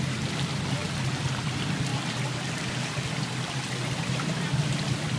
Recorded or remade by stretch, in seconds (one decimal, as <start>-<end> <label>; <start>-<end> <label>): 0.0-5.2 recorded